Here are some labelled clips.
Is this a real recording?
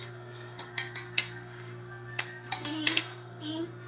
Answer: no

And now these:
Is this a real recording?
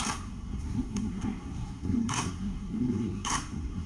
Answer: no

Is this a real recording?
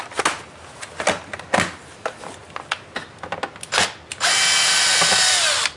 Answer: yes